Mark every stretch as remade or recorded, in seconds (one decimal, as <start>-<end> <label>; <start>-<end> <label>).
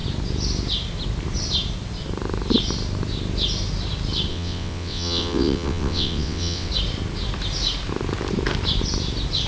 0.0-4.3 recorded; 4.3-6.7 remade; 6.7-9.5 recorded